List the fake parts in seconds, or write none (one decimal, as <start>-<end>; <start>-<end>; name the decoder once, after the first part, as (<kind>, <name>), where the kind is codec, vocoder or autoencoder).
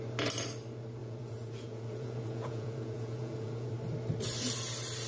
1.0-3.7 (vocoder, Vocos)